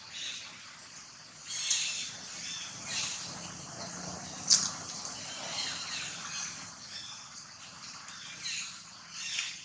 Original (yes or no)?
yes